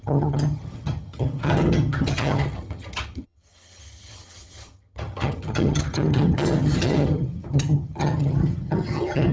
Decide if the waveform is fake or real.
fake